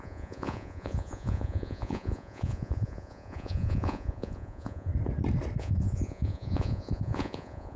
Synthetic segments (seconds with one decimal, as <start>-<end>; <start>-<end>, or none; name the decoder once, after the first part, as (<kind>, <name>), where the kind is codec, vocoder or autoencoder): 0.0-4.9 (vocoder, Vocos); 5.6-7.8